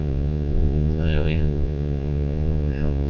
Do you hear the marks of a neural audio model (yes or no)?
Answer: yes